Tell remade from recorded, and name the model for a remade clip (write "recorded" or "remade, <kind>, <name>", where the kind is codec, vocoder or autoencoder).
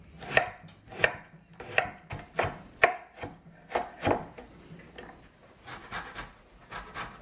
recorded